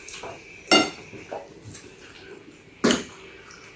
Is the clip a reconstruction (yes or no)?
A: no